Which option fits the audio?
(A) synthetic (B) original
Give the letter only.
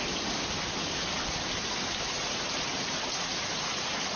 B